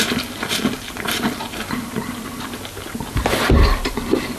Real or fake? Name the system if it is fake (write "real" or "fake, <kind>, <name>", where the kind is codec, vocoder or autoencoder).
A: real